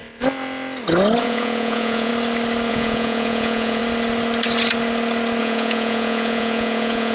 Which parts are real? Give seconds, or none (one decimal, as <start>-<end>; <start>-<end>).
0.0-1.2; 2.1-2.7; 3.8-5.4